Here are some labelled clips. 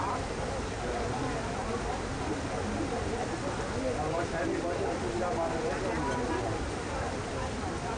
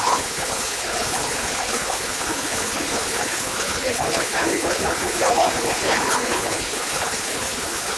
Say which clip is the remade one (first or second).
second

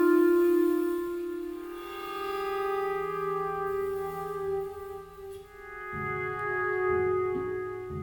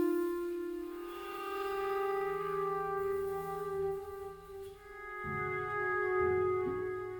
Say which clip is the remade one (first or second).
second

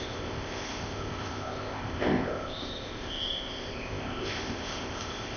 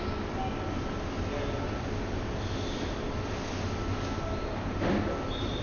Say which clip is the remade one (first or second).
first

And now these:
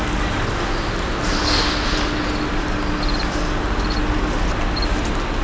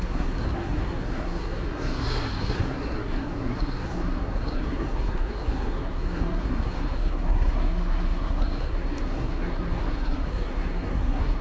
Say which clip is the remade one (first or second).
second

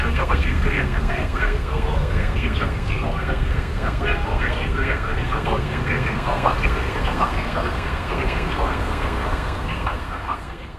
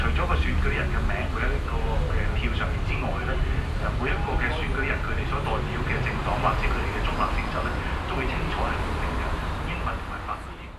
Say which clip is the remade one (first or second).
first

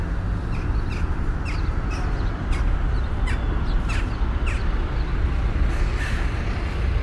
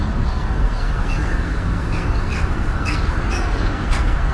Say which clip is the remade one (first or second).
second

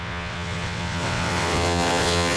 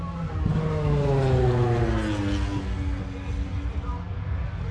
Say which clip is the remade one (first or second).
first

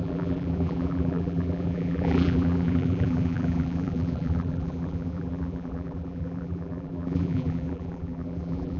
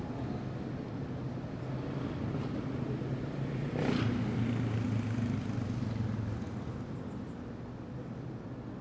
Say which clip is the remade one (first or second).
first